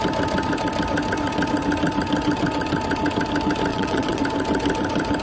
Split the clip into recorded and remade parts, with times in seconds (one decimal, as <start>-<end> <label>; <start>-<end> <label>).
0.0-3.7 recorded; 3.7-4.2 remade; 4.2-5.2 recorded

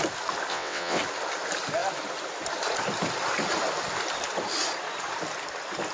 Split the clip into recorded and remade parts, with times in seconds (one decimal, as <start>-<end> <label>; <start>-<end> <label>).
0.0-0.5 recorded; 0.5-1.0 remade; 1.0-5.9 recorded

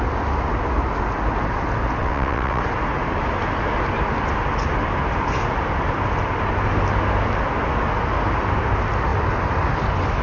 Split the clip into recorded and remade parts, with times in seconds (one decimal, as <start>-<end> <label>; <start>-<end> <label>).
0.0-2.0 recorded; 2.0-2.6 remade; 2.6-10.2 recorded